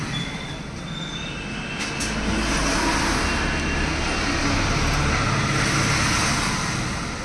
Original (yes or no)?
yes